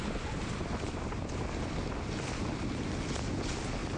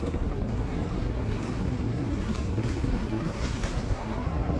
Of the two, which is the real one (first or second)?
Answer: first